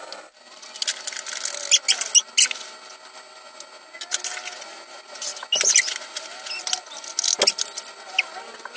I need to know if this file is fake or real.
real